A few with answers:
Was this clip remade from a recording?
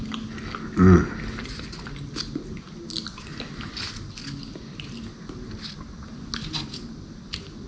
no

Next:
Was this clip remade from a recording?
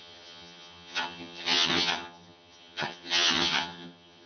yes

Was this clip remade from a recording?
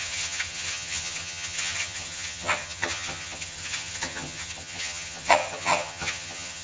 yes